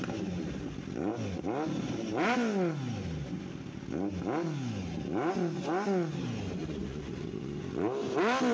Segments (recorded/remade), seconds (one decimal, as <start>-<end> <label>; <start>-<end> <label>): 0.0-6.6 recorded; 6.6-7.6 remade; 7.6-8.5 recorded